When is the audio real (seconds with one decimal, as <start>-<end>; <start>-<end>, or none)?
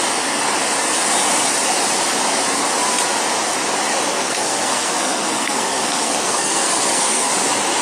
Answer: 0.0-4.1; 7.3-7.8